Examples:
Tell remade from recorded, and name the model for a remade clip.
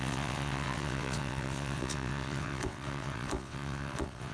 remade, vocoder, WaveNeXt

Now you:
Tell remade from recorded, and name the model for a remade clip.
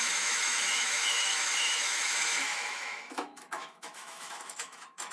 remade, autoencoder, DAC-VAE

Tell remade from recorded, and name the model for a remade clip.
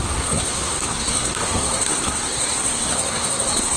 remade, codec, SNAC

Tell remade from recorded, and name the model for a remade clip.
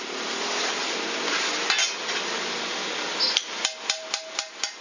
recorded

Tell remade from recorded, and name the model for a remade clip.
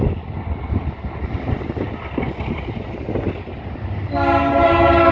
recorded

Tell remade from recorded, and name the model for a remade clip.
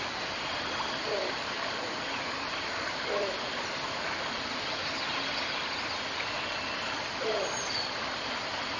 remade, vocoder, BigVGAN v2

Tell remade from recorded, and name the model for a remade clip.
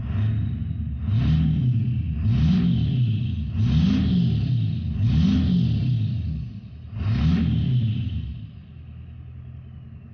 recorded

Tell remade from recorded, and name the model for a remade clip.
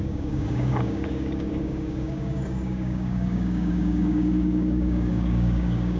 remade, codec, DAC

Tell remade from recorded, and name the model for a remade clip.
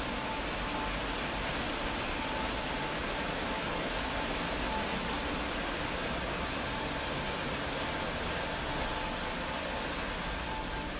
recorded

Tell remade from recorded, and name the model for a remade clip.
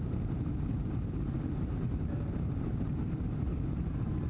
remade, vocoder, BigVGAN v2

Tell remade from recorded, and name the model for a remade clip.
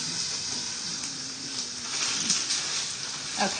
recorded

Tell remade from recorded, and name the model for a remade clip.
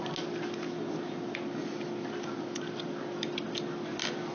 recorded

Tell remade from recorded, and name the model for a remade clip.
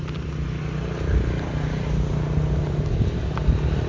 recorded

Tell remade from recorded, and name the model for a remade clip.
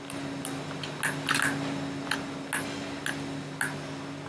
recorded